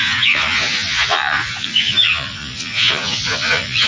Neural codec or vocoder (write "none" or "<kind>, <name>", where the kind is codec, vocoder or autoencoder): vocoder, Vocos